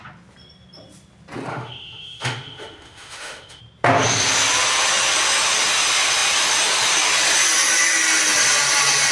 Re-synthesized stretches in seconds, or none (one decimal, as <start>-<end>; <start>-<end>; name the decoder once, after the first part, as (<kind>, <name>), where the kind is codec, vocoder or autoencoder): 1.5-3.6 (autoencoder, DAC-VAE)